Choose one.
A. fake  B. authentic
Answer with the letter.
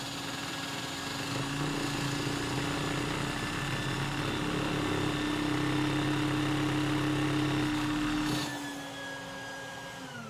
B